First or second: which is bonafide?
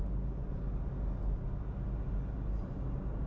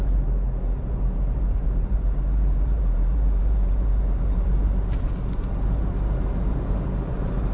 first